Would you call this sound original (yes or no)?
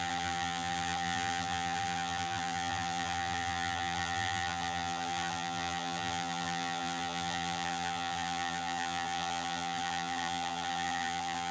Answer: no